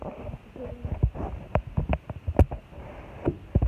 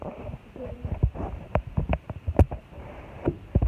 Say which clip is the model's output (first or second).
second